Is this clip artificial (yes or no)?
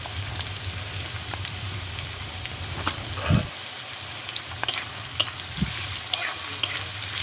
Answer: yes